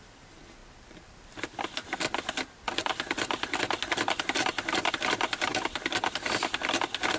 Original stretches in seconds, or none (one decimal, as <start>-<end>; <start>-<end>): none